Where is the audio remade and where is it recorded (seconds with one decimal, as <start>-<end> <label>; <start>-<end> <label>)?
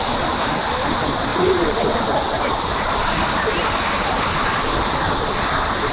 0.0-5.9 recorded